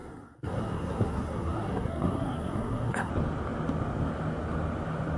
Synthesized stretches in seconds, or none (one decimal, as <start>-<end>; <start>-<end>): 0.0-3.1